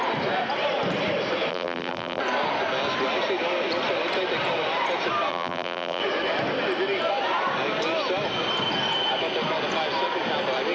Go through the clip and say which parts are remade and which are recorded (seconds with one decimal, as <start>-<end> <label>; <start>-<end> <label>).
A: 0.0-1.5 recorded; 1.5-2.2 remade; 2.2-5.3 recorded; 5.3-6.0 remade; 6.0-10.7 recorded